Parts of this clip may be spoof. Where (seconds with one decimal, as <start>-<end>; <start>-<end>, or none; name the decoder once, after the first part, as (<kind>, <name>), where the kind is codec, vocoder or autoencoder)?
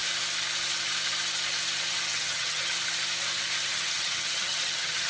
2.1-2.7 (vocoder, HiFi-GAN); 3.7-5.1